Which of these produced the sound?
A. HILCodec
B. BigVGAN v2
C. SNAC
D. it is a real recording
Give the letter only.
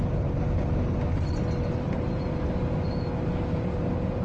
D